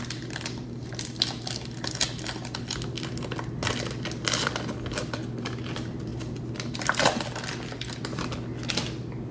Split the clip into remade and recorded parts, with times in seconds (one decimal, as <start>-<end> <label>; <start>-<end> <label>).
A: 0.0-9.3 recorded